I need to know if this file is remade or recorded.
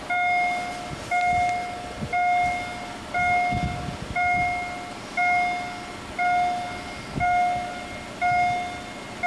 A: recorded